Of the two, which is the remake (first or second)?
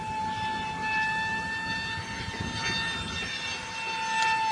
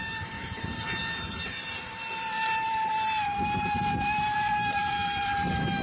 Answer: second